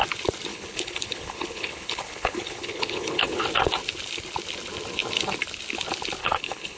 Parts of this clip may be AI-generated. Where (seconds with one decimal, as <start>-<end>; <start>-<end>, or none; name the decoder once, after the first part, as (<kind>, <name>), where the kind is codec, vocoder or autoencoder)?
0.5-3.4 (codec, HILCodec); 6.2-6.8